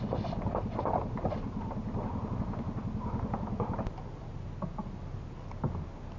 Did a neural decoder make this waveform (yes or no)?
no